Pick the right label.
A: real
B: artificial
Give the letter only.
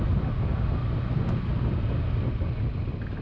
A